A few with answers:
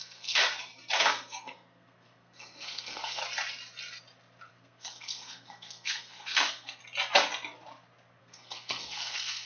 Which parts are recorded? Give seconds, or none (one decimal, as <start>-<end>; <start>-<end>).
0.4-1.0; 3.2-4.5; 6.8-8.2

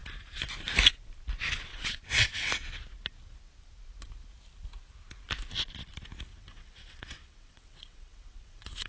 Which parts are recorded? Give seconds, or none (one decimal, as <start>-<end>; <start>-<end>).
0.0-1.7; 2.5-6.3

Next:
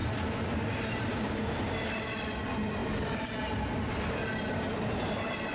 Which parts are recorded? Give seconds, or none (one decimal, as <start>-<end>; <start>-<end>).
0.0-5.5